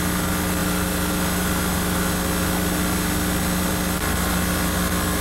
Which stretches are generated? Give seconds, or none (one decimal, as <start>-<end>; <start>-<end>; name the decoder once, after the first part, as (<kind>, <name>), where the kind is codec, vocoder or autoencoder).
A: none